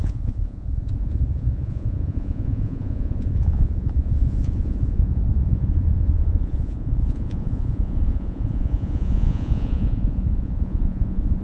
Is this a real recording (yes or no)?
no